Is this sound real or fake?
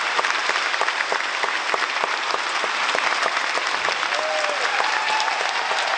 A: real